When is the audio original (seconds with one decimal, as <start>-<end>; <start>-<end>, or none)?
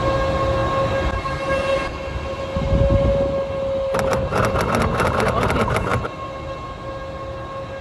0.0-7.8